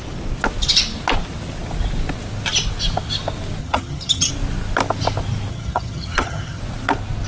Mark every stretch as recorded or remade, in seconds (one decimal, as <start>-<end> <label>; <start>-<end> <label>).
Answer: 0.0-3.6 recorded; 3.6-4.3 remade; 4.3-5.5 recorded; 5.5-6.6 remade; 6.6-7.3 recorded